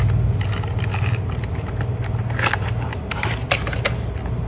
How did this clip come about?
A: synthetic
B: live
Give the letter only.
B